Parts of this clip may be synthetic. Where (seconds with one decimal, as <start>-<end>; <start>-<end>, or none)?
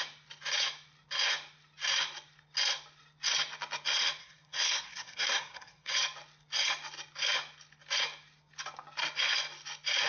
4.2-5.9